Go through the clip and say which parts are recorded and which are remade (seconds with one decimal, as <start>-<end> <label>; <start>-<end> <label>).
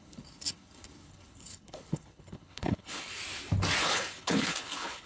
0.0-3.2 remade; 3.2-3.8 recorded; 3.8-5.1 remade